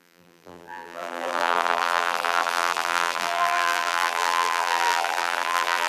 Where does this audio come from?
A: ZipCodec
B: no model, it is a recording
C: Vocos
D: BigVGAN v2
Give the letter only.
D